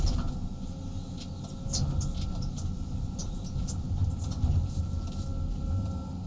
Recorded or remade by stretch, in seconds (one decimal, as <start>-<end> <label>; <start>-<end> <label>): 0.0-6.3 recorded